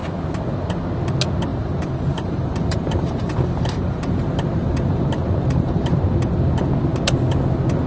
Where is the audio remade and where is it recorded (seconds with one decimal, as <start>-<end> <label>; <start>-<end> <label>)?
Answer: 0.0-1.5 recorded; 1.5-6.0 remade; 6.0-7.9 recorded